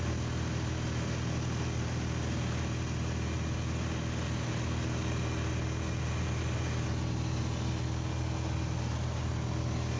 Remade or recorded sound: recorded